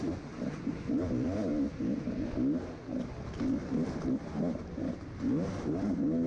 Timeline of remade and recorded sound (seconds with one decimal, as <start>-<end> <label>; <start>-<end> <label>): 0.0-6.3 recorded